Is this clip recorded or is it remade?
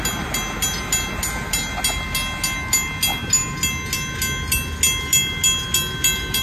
recorded